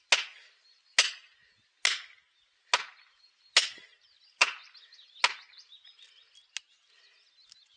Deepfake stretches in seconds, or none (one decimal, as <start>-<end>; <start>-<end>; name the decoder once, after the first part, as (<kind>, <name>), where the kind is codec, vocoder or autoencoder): none